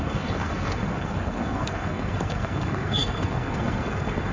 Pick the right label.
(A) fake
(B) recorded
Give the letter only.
A